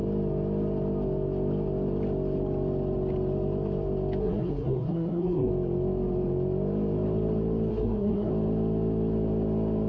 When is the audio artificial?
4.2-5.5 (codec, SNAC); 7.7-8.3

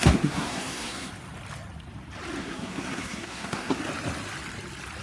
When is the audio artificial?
0.0-1.1 (codec, SNAC); 2.4-3.8